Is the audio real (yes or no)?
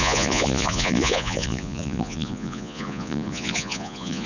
no